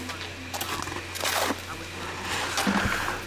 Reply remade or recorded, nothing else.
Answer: recorded